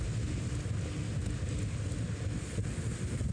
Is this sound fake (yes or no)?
no